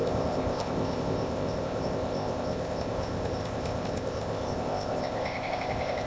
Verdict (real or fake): fake